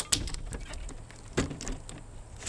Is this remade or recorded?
recorded